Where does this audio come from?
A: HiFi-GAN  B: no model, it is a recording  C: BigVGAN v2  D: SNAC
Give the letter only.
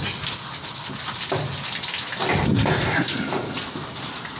B